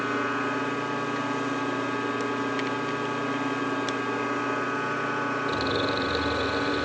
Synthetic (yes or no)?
no